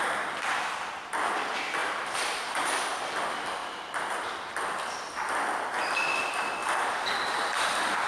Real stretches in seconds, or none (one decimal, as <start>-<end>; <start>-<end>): 0.0-1.8; 2.8-3.6; 4.5-6.6; 7.6-8.1